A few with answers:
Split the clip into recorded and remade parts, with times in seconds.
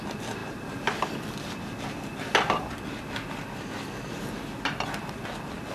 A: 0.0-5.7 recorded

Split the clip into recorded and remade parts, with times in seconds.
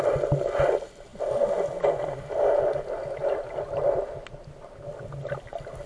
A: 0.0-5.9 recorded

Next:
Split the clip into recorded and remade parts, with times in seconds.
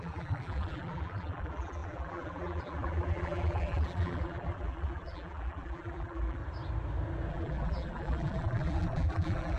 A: 0.0-6.4 remade; 6.4-7.3 recorded; 7.3-9.6 remade